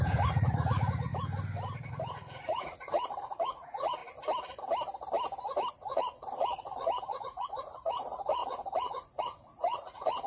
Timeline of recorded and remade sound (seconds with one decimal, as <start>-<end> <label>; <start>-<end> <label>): 0.0-1.1 remade; 1.1-1.9 recorded; 1.9-4.0 remade; 4.0-5.7 recorded; 5.7-10.3 remade